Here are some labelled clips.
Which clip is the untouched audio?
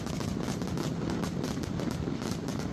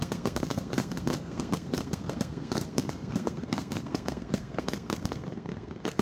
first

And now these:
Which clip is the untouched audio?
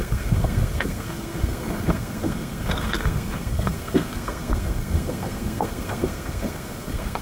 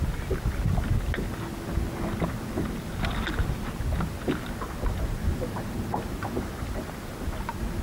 second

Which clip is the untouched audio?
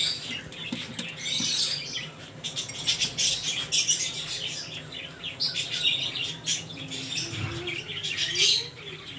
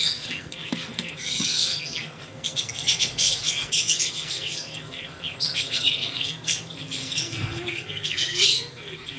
first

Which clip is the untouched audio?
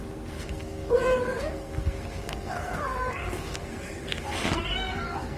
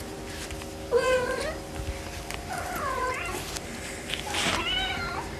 second